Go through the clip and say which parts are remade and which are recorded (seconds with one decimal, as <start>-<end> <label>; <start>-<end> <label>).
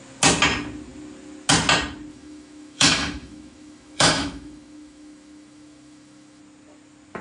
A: 0.0-2.1 recorded; 2.1-6.4 remade; 6.4-7.2 recorded